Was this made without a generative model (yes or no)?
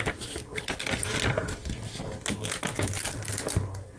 yes